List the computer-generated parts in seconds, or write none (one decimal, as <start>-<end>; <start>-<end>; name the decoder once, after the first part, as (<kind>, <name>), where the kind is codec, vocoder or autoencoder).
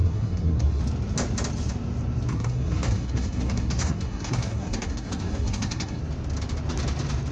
0.0-0.8 (codec, SNAC); 2.3-6.0